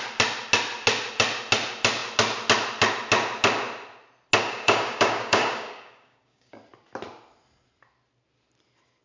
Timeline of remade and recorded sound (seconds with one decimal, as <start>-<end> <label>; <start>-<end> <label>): 0.0-4.4 recorded; 4.4-6.5 remade; 6.5-9.0 recorded